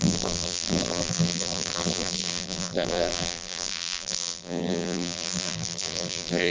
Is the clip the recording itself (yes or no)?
no